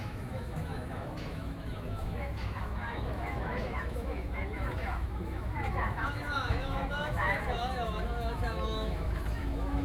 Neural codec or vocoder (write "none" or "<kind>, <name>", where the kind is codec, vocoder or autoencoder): autoencoder, DAC-VAE